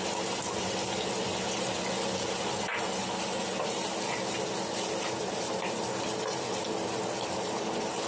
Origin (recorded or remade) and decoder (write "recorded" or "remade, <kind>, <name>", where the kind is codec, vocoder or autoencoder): recorded